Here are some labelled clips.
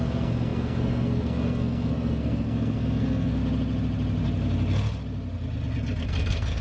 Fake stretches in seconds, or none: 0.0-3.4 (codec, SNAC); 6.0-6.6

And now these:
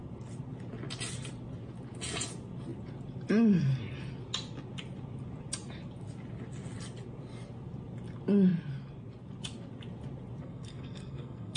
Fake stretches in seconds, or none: 10.4-11.6 (codec, SNAC)

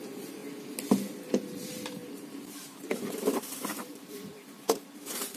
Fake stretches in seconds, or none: 0.0-0.4 (vocoder, BigVGAN v2); 1.3-5.4

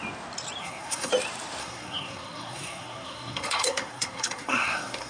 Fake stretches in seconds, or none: 0.6-1.1 (codec, SNAC); 1.6-5.1

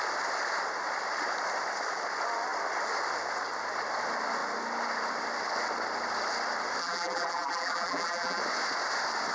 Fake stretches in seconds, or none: 6.8-8.4 (vocoder, BigVGAN v2)

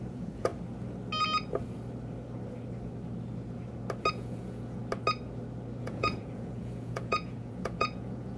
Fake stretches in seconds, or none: 0.0-0.5 (vocoder, Vocos); 4.1-4.8; 5.8-8.4